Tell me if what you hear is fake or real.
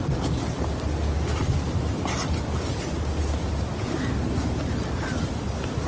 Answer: real